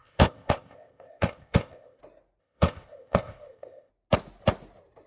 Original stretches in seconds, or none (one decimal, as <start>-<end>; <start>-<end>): 2.0-2.4; 3.9-5.1